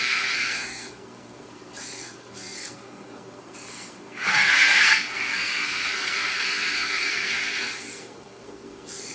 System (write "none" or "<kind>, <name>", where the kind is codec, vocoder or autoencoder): codec, SNAC